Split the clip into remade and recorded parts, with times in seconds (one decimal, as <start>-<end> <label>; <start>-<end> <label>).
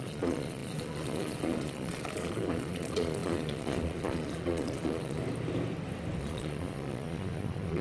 0.0-5.2 remade; 5.2-6.2 recorded; 6.2-7.8 remade